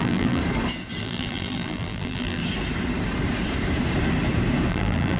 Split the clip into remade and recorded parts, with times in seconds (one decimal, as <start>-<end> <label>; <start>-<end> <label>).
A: 0.0-0.4 remade; 0.4-1.0 recorded; 1.0-2.4 remade; 2.4-4.7 recorded; 4.7-5.2 remade